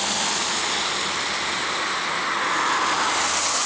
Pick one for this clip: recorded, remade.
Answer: recorded